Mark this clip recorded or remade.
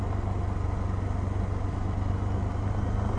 recorded